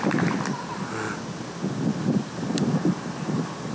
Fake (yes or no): no